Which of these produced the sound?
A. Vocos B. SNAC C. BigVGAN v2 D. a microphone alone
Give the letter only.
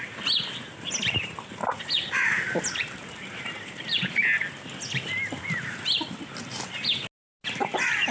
D